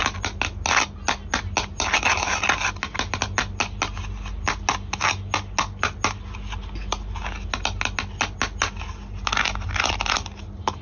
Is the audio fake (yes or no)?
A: no